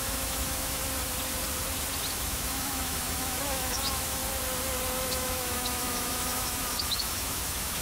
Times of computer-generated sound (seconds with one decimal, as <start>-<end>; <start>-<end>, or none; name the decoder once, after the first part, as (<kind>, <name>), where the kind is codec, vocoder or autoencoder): 0.0-0.8 (autoencoder, DAC-VAE); 2.1-4.2; 5.1-7.8